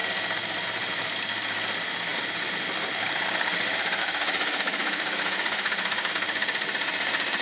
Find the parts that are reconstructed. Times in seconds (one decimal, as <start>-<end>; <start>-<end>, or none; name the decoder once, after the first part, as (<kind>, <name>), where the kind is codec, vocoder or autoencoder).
4.0-6.1 (autoencoder, DAC-VAE)